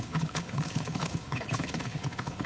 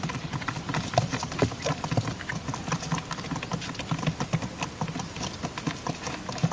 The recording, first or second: second